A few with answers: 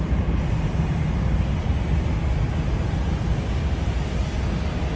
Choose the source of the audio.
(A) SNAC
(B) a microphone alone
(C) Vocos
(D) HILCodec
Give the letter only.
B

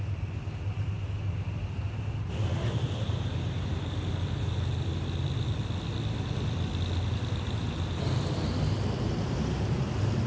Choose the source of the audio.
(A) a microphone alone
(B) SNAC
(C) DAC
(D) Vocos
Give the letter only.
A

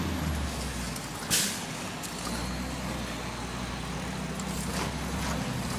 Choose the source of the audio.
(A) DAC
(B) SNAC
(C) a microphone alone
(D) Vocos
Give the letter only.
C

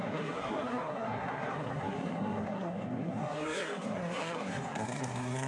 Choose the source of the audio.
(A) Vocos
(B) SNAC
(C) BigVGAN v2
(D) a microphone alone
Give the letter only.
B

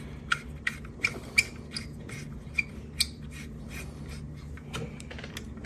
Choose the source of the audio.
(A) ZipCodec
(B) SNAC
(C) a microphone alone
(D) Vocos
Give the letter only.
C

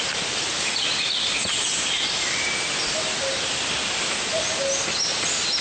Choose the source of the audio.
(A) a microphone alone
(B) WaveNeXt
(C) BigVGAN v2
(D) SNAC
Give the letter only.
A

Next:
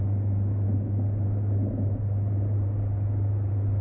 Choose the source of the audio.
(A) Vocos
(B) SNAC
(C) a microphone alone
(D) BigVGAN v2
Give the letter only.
C